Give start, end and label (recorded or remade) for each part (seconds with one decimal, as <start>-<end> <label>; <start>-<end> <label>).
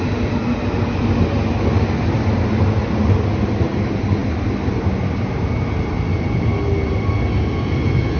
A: 0.0-8.2 recorded